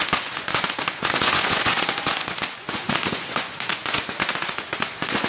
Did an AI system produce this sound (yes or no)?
yes